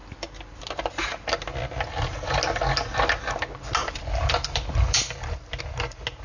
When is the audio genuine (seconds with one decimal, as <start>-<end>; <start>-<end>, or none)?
0.6-3.8; 5.6-6.2